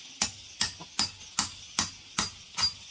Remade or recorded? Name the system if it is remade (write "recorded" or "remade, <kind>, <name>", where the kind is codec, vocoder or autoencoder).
recorded